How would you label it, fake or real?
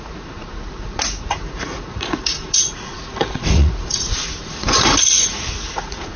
fake